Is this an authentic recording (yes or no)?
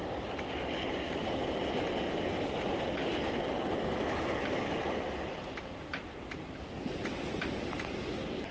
yes